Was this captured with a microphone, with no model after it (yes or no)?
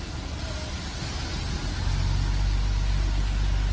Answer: yes